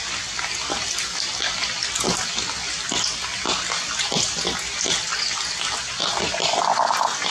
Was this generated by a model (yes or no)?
no